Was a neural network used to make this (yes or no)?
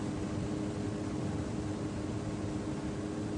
no